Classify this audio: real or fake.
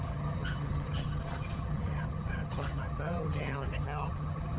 fake